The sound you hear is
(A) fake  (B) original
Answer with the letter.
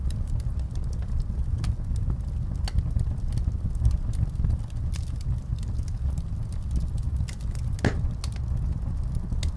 B